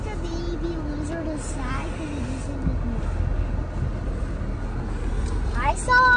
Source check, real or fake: real